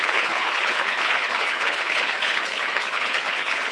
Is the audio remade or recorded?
remade